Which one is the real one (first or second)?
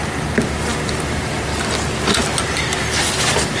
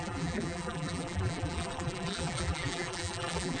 first